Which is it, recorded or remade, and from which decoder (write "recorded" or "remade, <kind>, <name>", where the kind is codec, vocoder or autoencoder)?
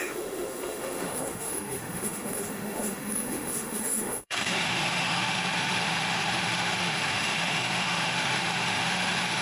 remade, autoencoder, DAC-VAE